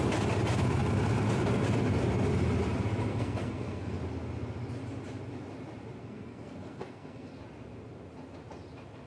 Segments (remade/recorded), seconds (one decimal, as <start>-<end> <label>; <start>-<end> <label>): 0.0-3.1 recorded; 3.1-4.0 remade; 4.0-6.0 recorded; 6.0-7.3 remade; 7.3-9.1 recorded